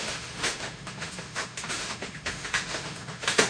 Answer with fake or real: fake